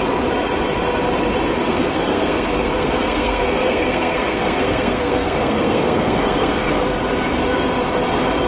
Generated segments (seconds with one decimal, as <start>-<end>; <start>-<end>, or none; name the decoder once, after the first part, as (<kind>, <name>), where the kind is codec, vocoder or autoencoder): 1.7-6.7 (codec, SNAC)